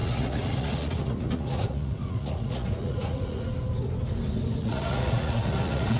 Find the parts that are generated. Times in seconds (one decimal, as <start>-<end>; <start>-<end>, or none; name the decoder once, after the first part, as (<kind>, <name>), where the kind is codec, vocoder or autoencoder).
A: 0.0-3.4 (vocoder, Vocos); 4.6-6.0